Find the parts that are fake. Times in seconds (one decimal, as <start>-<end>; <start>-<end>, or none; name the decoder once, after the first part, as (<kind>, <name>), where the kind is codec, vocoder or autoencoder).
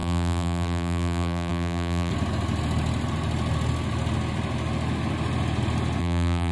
0.0-2.1 (vocoder, BigVGAN v2); 6.0-6.5